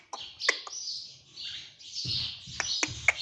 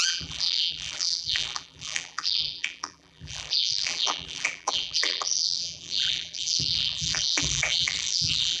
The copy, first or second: second